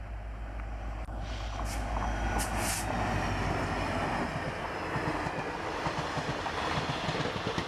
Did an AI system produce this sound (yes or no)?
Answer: no